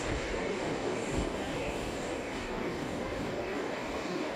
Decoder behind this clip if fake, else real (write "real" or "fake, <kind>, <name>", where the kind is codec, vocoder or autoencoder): fake, codec, DAC